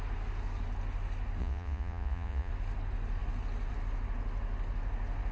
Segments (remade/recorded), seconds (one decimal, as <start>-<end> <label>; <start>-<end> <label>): 0.0-1.4 recorded; 1.4-2.5 remade; 2.5-5.3 recorded